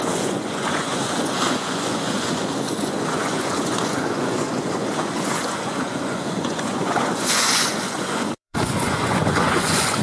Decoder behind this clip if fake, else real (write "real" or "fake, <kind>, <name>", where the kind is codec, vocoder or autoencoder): fake, vocoder, Vocos